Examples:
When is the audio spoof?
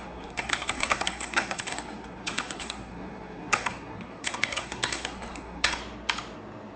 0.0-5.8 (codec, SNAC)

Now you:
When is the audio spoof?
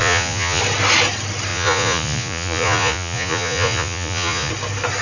0.0-0.6 (vocoder, Vocos); 1.5-4.5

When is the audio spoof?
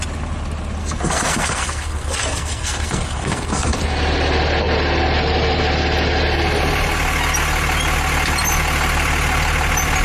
0.8-3.8 (codec, SNAC)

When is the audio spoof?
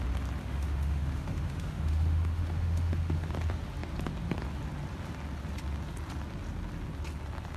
0.4-3.3 (autoencoder, DAC-VAE)